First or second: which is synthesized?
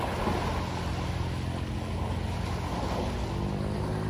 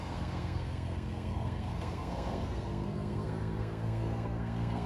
second